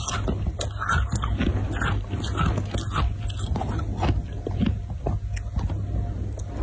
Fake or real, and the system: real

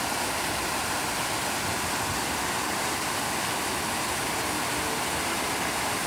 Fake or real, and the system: real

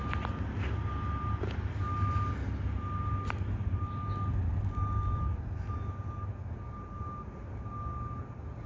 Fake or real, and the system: real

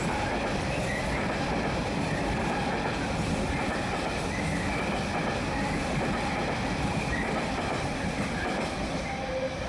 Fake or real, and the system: real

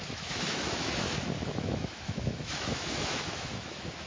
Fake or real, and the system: fake, autoencoder, DAC-VAE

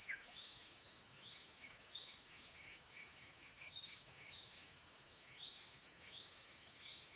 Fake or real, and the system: fake, autoencoder, DAC-VAE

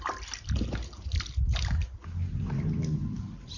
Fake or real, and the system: real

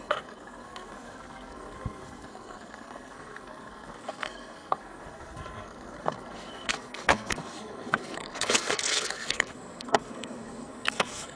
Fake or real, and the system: fake, codec, SNAC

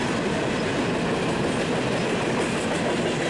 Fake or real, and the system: real